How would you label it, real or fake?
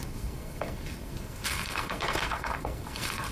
fake